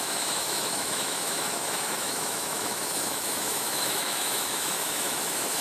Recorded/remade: remade